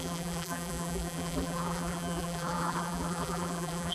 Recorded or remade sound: remade